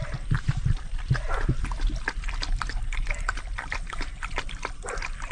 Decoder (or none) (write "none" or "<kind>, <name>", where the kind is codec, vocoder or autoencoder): none